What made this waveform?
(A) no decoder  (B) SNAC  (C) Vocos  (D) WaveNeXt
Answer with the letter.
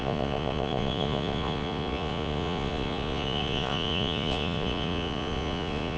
C